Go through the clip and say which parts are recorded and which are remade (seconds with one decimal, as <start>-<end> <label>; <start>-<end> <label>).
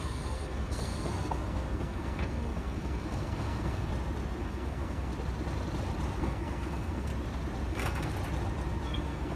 0.0-3.9 remade; 3.9-4.4 recorded; 4.4-5.1 remade; 5.1-6.2 recorded; 6.2-7.1 remade; 7.1-7.7 recorded; 7.7-8.1 remade; 8.1-8.9 recorded; 8.9-9.3 remade